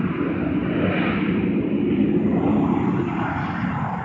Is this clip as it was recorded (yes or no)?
yes